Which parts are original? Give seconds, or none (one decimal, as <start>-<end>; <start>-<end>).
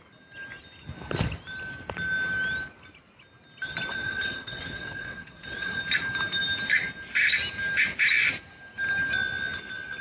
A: 0.0-3.9; 5.8-10.0